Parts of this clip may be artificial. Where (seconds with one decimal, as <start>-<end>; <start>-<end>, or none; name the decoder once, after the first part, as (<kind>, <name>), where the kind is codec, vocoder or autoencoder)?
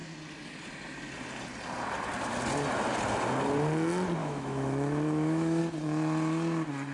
4.2-5.6 (autoencoder, DAC-VAE)